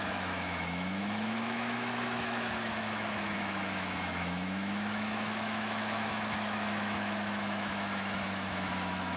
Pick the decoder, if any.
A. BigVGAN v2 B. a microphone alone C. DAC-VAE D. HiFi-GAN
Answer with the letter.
C